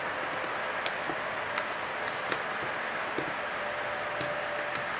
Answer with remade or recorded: recorded